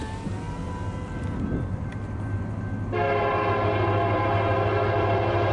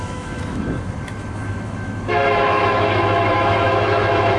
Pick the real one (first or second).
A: first